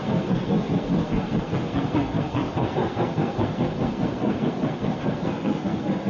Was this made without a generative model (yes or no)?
no